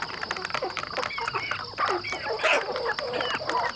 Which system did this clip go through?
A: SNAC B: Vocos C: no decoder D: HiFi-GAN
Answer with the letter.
C